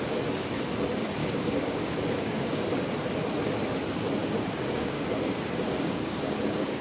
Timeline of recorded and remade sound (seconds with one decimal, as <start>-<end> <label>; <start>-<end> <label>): 0.0-1.2 recorded; 1.2-2.6 remade; 2.6-4.2 recorded; 4.2-6.8 remade